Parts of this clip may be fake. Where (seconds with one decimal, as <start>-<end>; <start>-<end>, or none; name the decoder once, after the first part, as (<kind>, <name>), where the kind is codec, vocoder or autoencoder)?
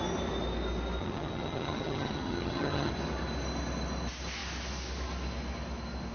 1.0-2.9 (vocoder, HiFi-GAN)